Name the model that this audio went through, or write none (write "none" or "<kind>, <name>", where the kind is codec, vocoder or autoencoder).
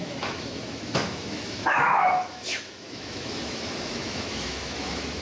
autoencoder, DAC-VAE